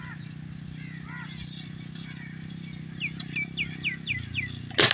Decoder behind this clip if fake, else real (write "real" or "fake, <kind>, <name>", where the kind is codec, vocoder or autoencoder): real